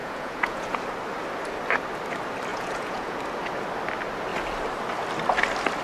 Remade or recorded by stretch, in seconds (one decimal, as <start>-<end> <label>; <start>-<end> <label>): 0.0-0.8 remade; 0.8-2.5 recorded; 2.5-3.2 remade; 3.2-5.8 recorded